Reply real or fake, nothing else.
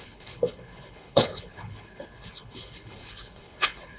fake